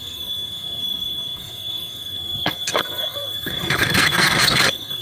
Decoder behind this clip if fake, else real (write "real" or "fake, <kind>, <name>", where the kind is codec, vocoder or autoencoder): fake, codec, SNAC